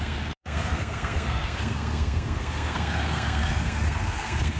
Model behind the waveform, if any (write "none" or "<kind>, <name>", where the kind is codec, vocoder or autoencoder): codec, SNAC